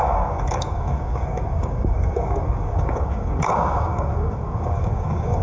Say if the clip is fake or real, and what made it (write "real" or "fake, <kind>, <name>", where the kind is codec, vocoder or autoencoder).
fake, codec, DAC